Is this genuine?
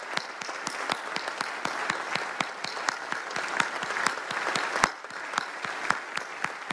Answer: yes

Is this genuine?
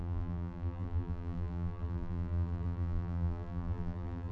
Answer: no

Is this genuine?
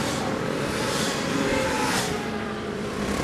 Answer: no